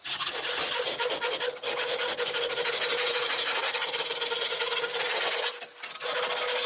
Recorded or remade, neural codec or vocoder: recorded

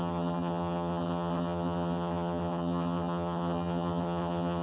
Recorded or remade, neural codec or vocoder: remade, vocoder, HiFi-GAN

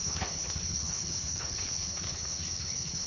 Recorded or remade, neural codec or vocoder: remade, codec, HILCodec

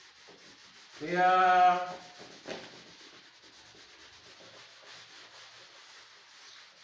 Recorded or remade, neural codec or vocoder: recorded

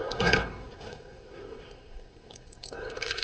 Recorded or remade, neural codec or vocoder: remade, codec, SNAC